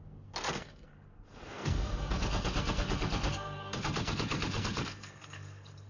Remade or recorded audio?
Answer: remade